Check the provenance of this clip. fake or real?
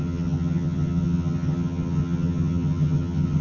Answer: fake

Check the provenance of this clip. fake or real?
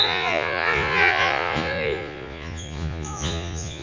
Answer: fake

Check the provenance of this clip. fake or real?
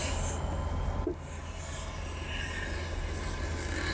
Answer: real